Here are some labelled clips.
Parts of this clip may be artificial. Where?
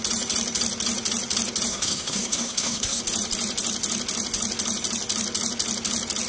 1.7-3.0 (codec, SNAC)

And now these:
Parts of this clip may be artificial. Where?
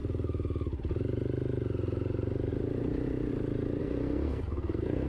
3.8-5.1 (codec, SNAC)